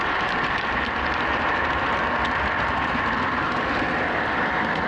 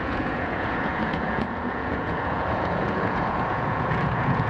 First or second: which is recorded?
first